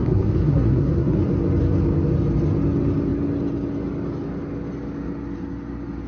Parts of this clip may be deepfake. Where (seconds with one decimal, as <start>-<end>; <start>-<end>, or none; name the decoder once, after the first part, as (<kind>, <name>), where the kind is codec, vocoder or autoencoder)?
0.0-1.2 (codec, SNAC)